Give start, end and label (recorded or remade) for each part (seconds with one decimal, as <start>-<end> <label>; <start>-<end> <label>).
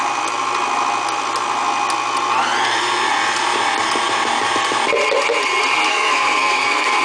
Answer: 0.0-5.9 recorded; 5.9-7.0 remade